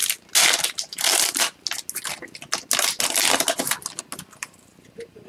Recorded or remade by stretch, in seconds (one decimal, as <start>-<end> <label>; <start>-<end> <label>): 0.0-5.3 recorded